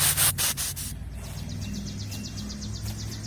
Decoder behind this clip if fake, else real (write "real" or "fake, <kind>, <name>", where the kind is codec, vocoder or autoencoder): real